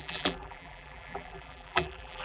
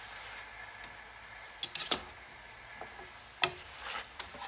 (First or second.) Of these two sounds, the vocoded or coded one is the first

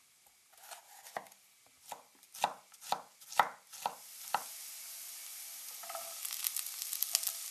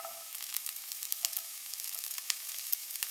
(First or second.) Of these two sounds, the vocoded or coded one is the second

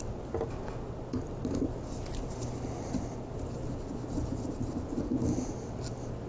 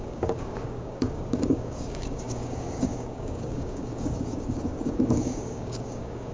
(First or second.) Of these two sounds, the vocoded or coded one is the second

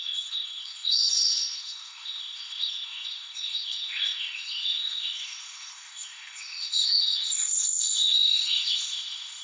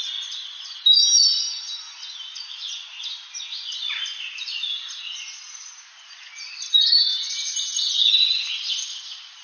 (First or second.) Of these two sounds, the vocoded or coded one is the first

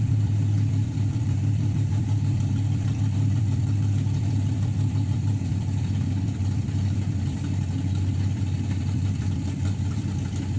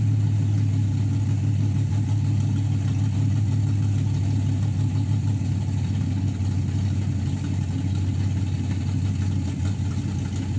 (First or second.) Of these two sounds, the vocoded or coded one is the first